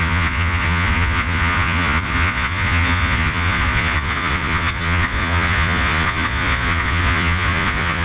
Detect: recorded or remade remade